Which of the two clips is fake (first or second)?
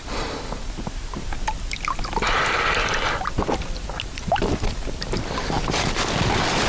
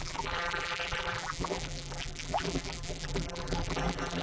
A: second